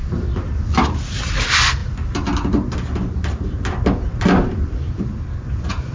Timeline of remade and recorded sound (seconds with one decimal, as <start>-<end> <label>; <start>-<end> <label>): 0.0-5.9 recorded